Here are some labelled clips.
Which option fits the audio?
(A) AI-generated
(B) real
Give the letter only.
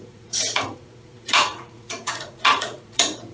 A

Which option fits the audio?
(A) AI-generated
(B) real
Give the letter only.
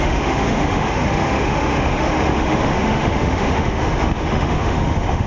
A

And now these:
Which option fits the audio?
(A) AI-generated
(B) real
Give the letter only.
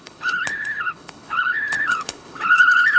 A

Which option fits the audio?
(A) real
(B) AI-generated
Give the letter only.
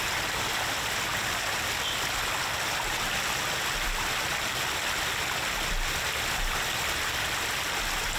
A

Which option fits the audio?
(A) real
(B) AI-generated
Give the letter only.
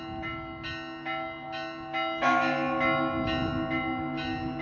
A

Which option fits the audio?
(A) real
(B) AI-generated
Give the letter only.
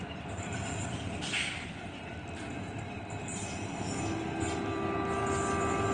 A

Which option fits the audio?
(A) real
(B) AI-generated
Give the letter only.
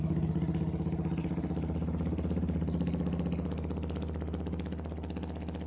A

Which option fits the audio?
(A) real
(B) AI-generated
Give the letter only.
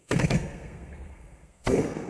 B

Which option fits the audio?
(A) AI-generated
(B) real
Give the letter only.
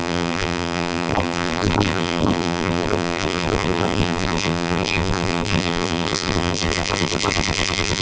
A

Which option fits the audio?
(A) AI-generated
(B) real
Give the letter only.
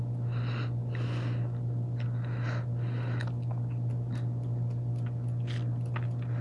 B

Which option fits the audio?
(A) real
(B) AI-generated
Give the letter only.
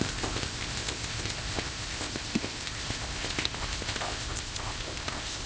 B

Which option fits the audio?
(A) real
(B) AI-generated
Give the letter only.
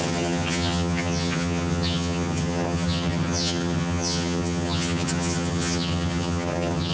B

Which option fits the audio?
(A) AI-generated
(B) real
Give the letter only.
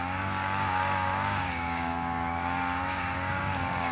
A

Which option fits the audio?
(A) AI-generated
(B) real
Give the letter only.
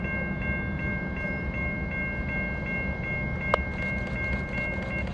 B